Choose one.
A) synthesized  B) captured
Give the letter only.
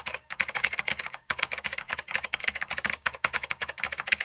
A